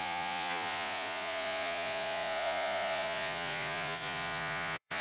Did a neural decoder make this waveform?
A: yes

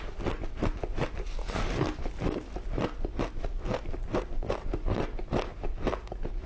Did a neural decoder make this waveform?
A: no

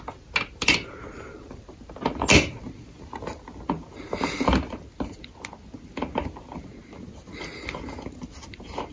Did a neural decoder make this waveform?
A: no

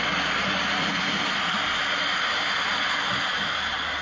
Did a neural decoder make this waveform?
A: no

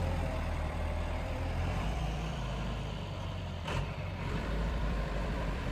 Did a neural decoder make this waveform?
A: yes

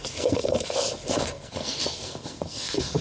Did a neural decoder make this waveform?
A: yes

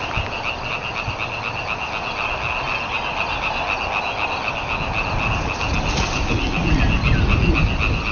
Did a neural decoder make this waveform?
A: no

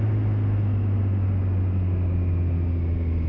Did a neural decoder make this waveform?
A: no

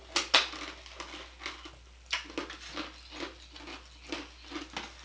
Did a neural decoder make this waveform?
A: no